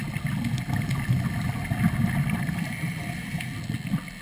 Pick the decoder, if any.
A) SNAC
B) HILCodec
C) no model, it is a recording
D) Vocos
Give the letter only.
C